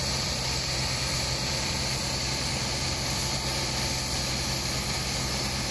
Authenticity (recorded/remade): remade